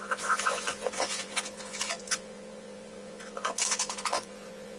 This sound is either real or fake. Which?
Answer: fake